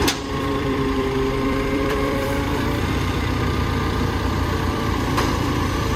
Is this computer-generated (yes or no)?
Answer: yes